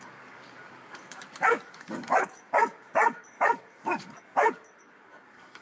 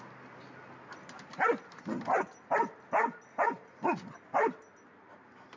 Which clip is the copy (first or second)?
first